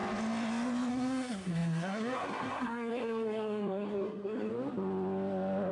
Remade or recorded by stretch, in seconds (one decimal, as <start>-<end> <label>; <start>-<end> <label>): 0.0-0.9 recorded; 0.9-4.5 remade; 4.5-5.7 recorded